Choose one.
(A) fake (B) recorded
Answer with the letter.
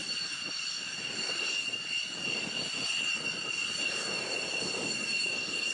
B